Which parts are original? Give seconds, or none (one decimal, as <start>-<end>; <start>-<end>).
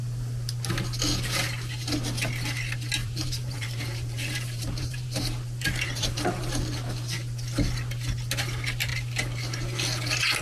0.0-3.0; 6.5-10.4